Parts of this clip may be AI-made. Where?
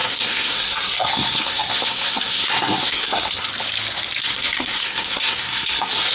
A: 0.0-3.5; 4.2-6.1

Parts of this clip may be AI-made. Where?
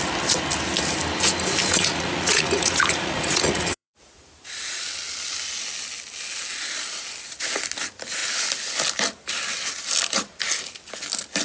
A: 1.7-4.8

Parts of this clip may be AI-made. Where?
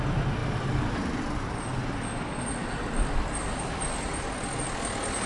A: none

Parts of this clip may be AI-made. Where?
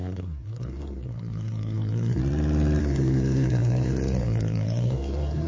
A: 0.0-2.2; 2.8-5.5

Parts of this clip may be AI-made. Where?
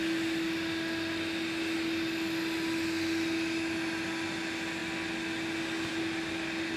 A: none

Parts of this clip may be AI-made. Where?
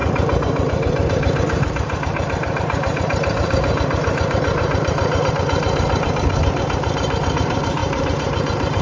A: 0.0-8.8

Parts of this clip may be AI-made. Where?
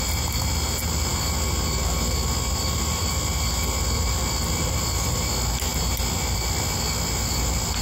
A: none